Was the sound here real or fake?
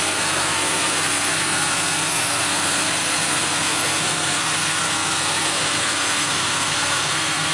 fake